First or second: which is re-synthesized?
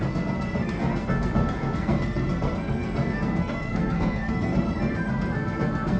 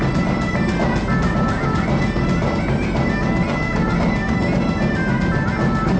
first